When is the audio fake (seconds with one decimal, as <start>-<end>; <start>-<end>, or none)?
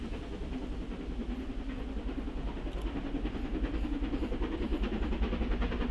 none